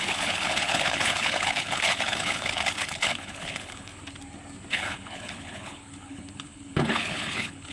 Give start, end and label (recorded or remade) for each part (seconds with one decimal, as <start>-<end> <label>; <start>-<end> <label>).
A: 0.0-3.9 remade; 3.9-4.7 recorded; 4.7-7.7 remade